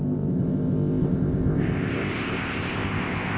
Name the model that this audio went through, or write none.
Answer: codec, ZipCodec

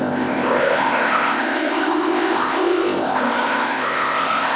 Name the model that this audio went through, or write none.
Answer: codec, ZipCodec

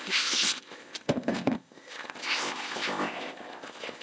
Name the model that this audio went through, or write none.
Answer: codec, ZipCodec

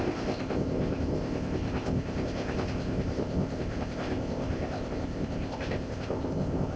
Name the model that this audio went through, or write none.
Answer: codec, ZipCodec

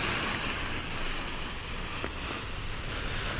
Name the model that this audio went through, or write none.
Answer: none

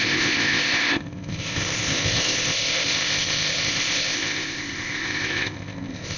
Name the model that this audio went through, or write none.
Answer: codec, ZipCodec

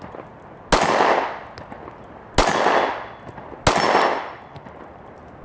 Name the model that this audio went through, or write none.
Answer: none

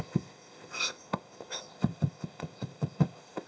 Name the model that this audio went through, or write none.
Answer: codec, ZipCodec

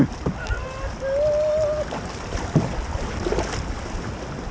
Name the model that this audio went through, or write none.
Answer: none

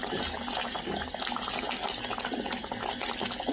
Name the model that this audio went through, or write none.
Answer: none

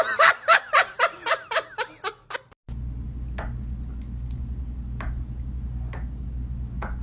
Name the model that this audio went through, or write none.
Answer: none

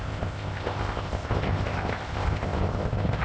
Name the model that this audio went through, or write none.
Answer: codec, ZipCodec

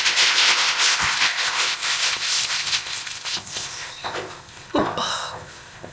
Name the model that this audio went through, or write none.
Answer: codec, ZipCodec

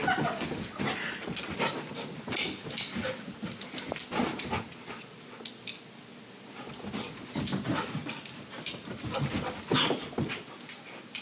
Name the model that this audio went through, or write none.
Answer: none